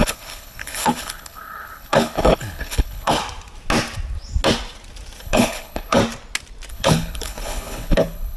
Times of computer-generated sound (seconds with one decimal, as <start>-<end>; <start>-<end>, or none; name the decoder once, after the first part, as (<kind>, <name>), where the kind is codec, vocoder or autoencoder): 0.0-3.2 (codec, HILCodec); 5.2-6.0; 6.7-8.4